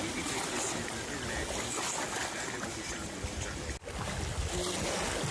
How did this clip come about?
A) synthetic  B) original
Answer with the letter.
B